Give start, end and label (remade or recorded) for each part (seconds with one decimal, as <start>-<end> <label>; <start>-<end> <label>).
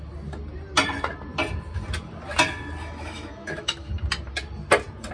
0.0-2.8 recorded; 2.8-3.9 remade; 3.9-5.1 recorded